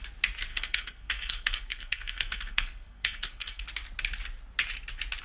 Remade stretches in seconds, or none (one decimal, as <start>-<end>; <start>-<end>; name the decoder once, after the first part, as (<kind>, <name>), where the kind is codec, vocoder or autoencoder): 0.5-3.6 (codec, SNAC)